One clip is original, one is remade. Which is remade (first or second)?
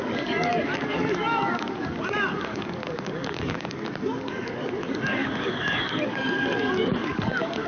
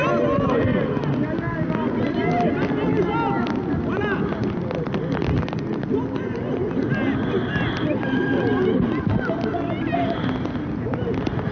first